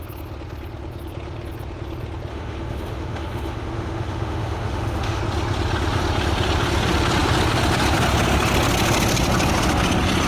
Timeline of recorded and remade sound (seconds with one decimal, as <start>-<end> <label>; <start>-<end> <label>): 0.0-2.3 recorded; 2.3-5.2 remade; 5.2-10.3 recorded